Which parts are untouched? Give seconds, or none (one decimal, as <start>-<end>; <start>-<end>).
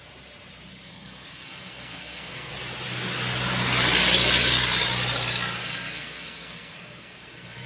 0.0-0.7; 2.5-5.6